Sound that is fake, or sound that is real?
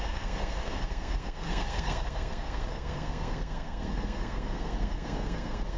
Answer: fake